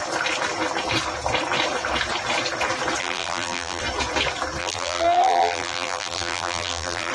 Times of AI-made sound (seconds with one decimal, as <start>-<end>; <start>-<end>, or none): 3.0-3.8; 4.6-7.1